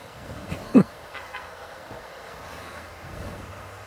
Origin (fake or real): fake